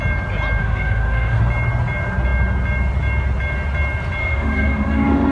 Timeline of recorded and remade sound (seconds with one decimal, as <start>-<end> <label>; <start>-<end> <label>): 0.0-0.6 recorded; 0.6-1.4 remade; 1.4-4.2 recorded; 4.2-5.3 remade